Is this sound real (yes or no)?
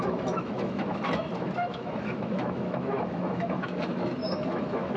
no